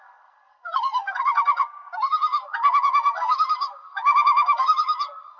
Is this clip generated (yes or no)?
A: yes